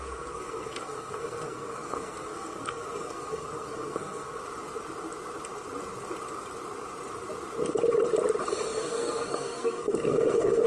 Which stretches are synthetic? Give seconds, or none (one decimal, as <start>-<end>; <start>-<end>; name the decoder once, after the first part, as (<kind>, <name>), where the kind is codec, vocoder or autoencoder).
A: 0.0-4.4 (codec, SNAC); 8.8-10.7